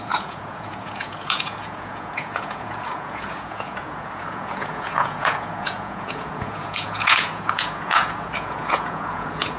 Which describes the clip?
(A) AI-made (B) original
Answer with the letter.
A